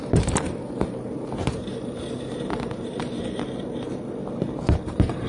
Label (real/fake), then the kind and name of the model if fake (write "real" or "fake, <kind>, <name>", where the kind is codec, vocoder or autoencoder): fake, vocoder, BigVGAN v2